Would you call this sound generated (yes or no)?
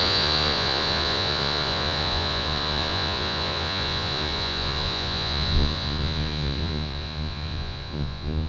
yes